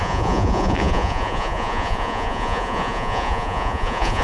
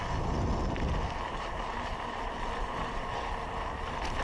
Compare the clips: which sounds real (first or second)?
second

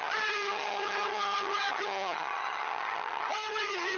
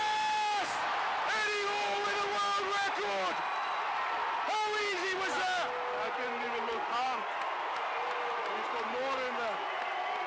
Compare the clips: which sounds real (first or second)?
second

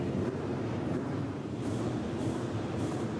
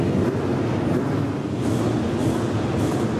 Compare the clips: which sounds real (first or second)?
second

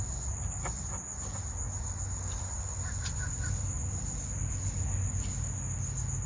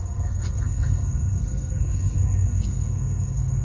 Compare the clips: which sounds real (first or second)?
first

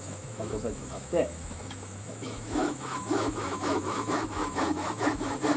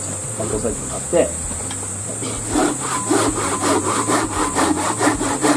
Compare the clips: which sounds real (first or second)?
second